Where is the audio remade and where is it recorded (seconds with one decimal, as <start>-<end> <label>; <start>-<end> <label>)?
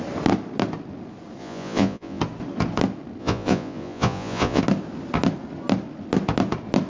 0.0-1.4 recorded; 1.4-2.2 remade; 2.2-3.2 recorded; 3.2-4.6 remade; 4.6-6.9 recorded